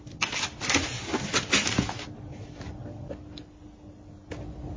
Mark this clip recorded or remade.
recorded